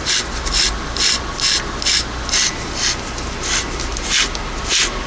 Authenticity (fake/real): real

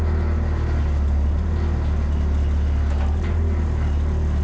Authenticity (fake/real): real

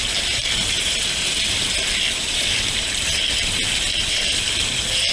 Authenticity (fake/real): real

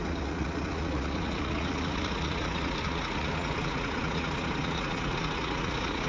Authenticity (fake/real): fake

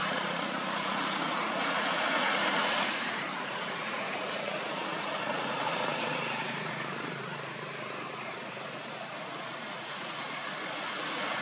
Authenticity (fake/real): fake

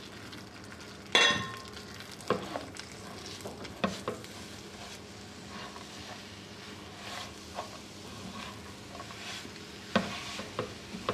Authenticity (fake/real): real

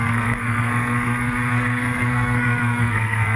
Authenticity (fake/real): fake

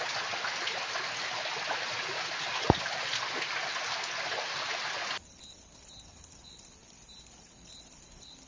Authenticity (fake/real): real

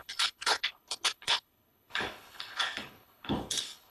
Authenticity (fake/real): fake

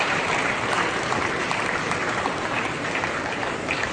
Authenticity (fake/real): fake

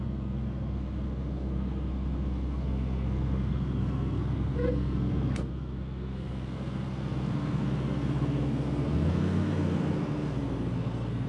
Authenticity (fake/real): fake